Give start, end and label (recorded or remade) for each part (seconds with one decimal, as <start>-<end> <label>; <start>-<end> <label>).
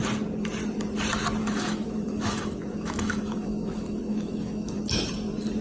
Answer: 0.0-1.4 recorded; 1.4-4.8 remade; 4.8-5.6 recorded